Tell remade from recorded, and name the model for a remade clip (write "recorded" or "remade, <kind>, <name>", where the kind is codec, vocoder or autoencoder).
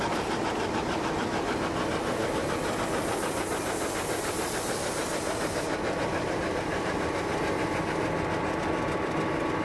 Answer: recorded